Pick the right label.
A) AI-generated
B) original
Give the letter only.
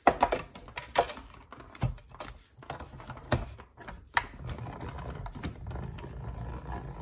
B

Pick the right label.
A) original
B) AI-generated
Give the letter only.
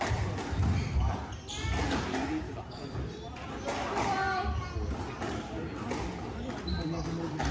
A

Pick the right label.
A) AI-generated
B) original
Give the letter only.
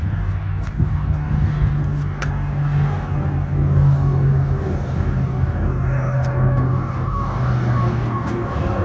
A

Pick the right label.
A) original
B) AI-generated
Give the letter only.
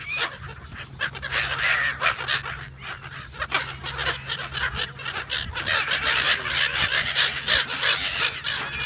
A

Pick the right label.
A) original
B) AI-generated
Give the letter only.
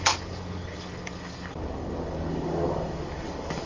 B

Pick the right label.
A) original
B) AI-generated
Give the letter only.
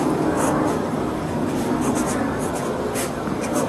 B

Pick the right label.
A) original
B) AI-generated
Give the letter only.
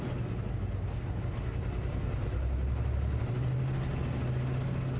A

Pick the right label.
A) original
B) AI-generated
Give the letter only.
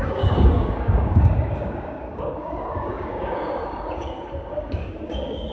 B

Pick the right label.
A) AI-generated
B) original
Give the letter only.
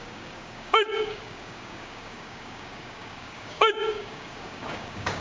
A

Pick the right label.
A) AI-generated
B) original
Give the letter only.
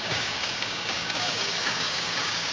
A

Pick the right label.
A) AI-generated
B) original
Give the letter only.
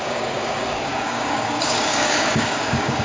A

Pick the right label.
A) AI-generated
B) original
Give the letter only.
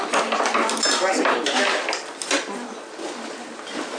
B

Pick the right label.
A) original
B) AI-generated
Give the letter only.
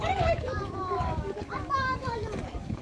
B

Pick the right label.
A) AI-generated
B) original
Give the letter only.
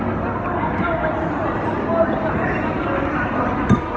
B